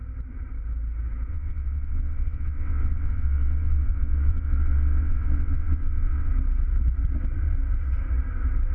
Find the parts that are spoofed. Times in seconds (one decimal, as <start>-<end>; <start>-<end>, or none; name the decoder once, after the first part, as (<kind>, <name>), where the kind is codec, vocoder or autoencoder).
1.3-6.3 (vocoder, WaveNeXt)